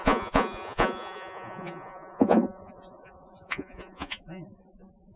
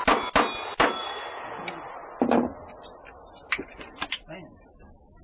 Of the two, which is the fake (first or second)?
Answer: first